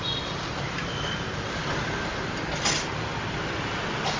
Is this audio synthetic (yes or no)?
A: no